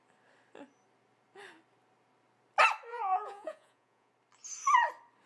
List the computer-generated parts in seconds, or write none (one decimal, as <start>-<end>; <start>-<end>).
2.9-4.1